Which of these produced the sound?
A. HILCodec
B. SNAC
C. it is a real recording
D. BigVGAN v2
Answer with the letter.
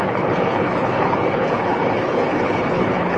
A